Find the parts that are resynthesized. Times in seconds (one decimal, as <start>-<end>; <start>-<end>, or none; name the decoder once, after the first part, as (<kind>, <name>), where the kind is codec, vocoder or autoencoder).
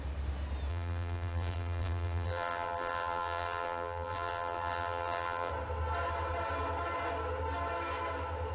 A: 0.7-5.5 (vocoder, BigVGAN v2)